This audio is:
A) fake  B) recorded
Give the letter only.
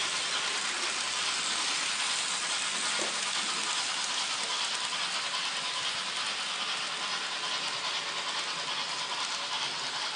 B